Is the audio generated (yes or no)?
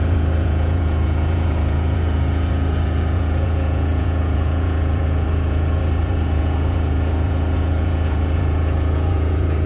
yes